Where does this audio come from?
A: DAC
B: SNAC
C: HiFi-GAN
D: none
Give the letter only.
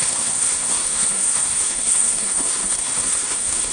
B